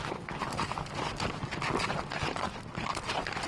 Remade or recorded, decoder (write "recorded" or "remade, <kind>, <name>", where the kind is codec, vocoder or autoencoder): recorded